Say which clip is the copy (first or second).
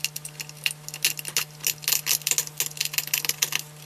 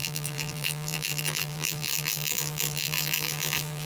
second